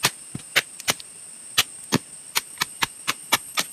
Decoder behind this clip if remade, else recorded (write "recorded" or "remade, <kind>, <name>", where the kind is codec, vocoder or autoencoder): recorded